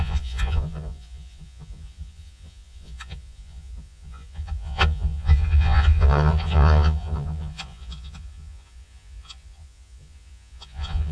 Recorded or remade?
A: remade